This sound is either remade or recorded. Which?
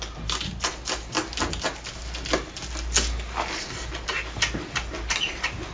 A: recorded